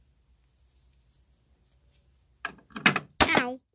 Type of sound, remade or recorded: recorded